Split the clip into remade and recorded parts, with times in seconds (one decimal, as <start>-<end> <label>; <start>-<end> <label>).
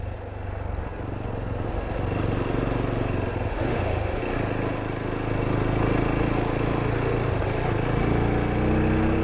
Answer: 0.0-3.5 recorded; 3.5-4.2 remade; 4.2-9.2 recorded